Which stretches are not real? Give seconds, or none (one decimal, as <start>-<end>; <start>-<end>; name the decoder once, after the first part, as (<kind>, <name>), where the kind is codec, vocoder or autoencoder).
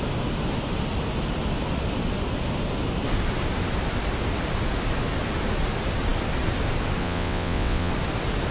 7.0-7.9 (vocoder, WaveNeXt)